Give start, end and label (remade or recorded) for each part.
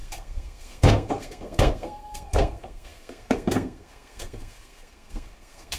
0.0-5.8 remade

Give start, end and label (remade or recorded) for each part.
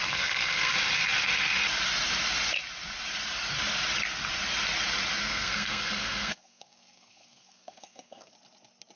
0.0-0.7 remade; 0.7-5.2 recorded; 5.2-8.3 remade; 8.3-9.0 recorded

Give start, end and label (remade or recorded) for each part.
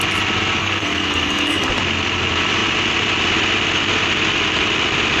0.0-0.6 recorded; 0.6-1.7 remade; 1.7-5.2 recorded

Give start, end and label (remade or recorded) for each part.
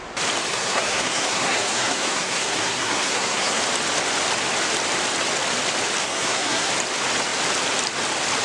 0.0-0.5 recorded; 0.5-3.6 remade; 3.6-6.0 recorded; 6.0-6.7 remade; 6.7-8.4 recorded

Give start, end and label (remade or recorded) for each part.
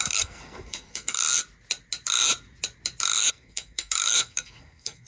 0.0-1.2 remade; 1.2-3.3 recorded; 3.3-5.1 remade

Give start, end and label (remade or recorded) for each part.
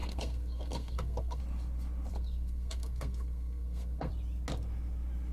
0.0-1.4 remade; 1.4-2.1 recorded; 2.1-4.1 remade; 4.1-5.3 recorded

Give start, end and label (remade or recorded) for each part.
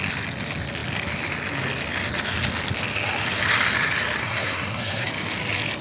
0.0-4.2 recorded; 4.2-5.1 remade; 5.1-5.8 recorded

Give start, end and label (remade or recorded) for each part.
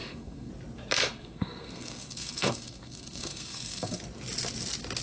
0.0-0.5 remade; 0.5-1.0 recorded; 1.0-4.0 remade; 4.0-5.0 recorded